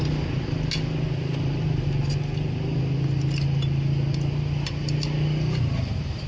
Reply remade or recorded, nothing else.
recorded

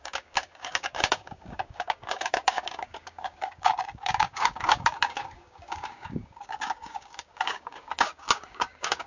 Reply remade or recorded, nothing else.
remade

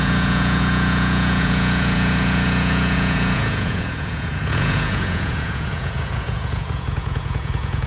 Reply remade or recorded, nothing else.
remade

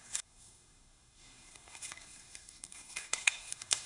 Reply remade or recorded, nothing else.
remade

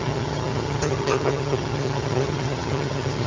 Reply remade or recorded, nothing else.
remade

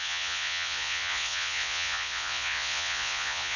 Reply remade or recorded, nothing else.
remade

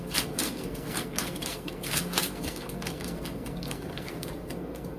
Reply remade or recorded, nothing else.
remade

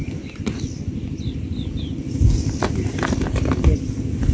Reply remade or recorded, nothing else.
recorded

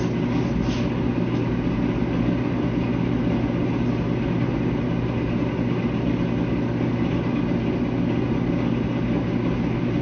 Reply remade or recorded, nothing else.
recorded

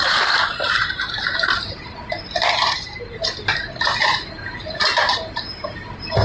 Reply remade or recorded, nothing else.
remade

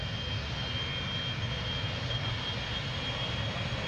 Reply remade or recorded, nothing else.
recorded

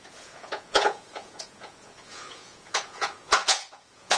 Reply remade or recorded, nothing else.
remade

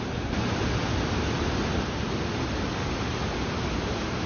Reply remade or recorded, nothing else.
recorded